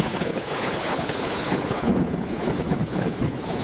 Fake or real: fake